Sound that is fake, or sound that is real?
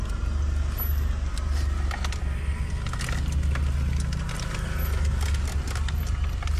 real